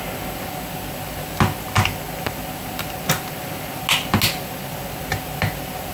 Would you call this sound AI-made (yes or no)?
no